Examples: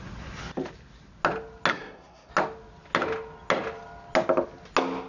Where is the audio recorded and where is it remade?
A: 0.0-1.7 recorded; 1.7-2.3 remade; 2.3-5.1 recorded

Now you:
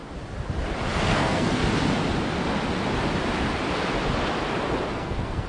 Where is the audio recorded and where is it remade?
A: 0.0-1.0 recorded; 1.0-1.6 remade; 1.6-4.9 recorded; 4.9-5.5 remade

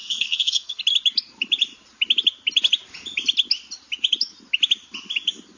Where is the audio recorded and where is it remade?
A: 0.0-0.8 remade; 0.8-5.6 recorded

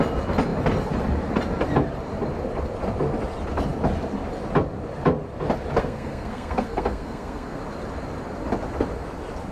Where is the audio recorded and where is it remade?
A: 0.0-5.8 recorded; 5.8-7.6 remade; 7.6-9.5 recorded

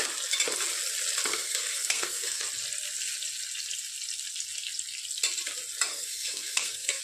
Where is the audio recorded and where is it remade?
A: 0.0-1.3 recorded; 1.3-2.4 remade; 2.4-5.9 recorded; 5.9-7.0 remade

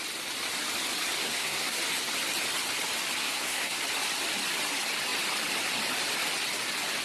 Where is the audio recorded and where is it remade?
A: 0.0-1.2 recorded; 1.2-1.8 remade; 1.8-3.2 recorded; 3.2-3.8 remade; 3.8-7.0 recorded

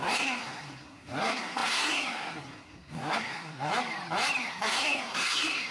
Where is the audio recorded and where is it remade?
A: 0.0-3.7 remade; 3.7-4.4 recorded; 4.4-5.7 remade

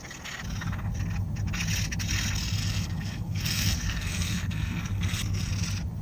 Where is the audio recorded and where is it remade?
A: 0.0-2.6 recorded; 2.6-5.5 remade; 5.5-6.0 recorded